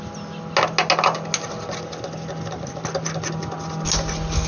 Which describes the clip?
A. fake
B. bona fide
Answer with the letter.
B